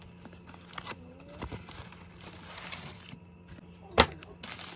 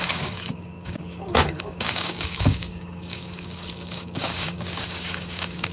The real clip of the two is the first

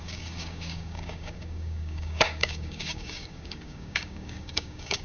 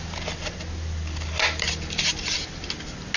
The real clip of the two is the second